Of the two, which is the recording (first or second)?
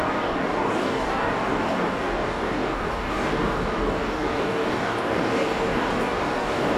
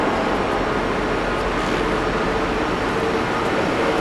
second